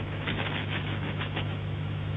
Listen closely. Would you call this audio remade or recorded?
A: remade